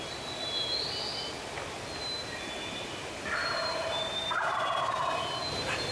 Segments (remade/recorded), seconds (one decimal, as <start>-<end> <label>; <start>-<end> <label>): 0.0-3.4 recorded; 3.4-5.9 remade

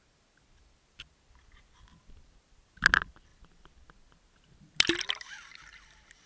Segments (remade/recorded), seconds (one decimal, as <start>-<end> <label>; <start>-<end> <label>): 0.0-6.3 recorded

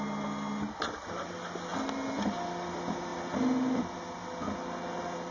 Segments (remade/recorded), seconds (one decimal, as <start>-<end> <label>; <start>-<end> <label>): 0.0-5.3 recorded